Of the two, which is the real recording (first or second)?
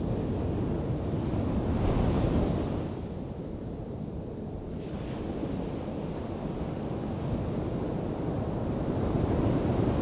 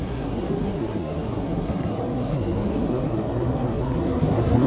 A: first